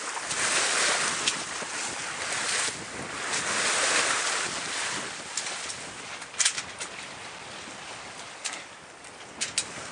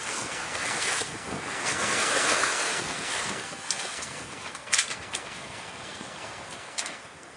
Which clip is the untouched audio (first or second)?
first